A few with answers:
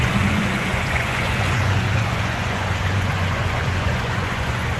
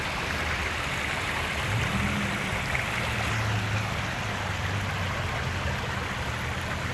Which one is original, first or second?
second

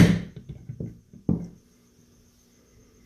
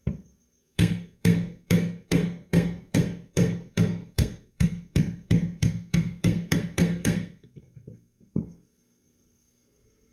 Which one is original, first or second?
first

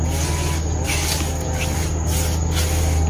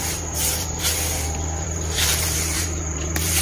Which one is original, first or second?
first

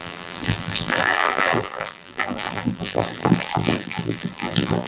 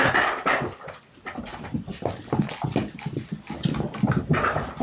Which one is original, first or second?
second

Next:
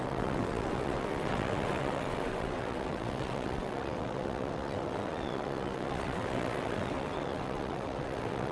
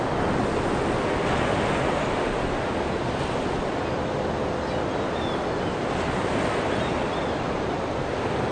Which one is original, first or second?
second